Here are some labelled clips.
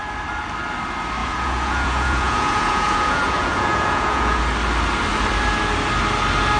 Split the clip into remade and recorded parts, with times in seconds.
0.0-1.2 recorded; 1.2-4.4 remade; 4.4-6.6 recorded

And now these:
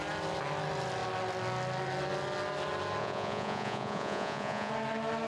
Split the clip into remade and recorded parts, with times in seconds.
0.0-3.0 recorded; 3.0-4.7 remade; 4.7-5.3 recorded

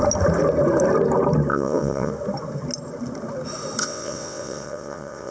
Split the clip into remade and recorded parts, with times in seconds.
0.0-1.5 recorded; 1.5-2.1 remade; 2.1-3.8 recorded; 3.8-5.3 remade

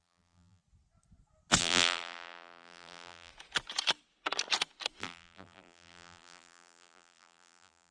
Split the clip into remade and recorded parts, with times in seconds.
0.0-0.6 remade; 0.6-1.6 recorded; 1.6-3.3 remade; 3.3-5.0 recorded; 5.0-7.9 remade